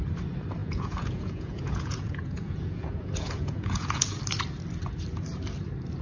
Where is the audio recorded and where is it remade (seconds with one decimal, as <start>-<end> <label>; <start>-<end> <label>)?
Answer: 0.0-0.6 recorded; 0.6-4.2 remade; 4.2-6.0 recorded